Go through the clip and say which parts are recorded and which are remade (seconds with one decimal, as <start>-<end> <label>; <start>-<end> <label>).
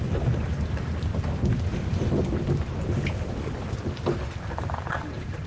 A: 0.0-1.1 remade; 1.1-4.4 recorded; 4.4-5.5 remade